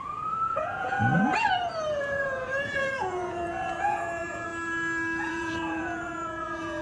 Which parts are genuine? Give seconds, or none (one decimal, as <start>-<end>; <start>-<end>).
1.3-2.0; 4.5-5.3